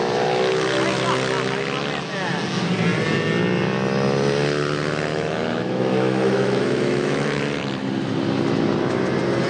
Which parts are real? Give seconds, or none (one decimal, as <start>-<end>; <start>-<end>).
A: 0.0-5.1; 7.4-9.5